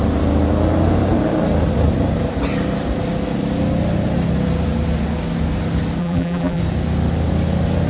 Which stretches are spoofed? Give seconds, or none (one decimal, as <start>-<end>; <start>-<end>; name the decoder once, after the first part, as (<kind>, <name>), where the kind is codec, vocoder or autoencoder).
6.0-6.6 (vocoder, BigVGAN v2)